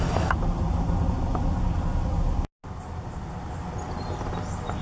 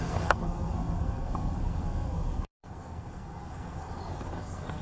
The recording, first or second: first